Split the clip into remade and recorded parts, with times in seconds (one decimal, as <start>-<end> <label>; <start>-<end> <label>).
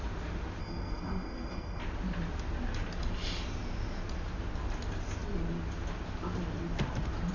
0.0-0.6 recorded; 0.6-1.8 remade; 1.8-7.3 recorded